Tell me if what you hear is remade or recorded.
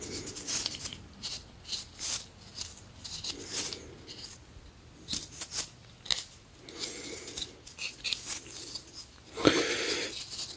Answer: recorded